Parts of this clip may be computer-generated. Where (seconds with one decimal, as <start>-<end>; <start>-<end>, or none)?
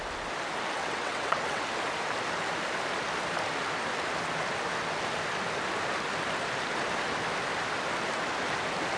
0.8-1.6